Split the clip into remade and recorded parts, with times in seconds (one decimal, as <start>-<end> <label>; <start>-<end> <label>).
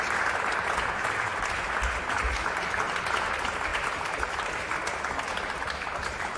0.0-3.7 recorded; 3.7-4.5 remade; 4.5-6.4 recorded